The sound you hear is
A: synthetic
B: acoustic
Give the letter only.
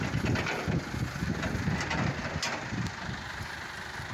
B